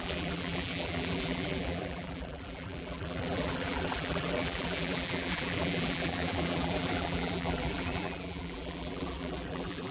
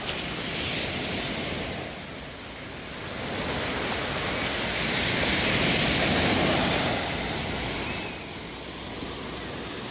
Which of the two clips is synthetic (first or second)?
first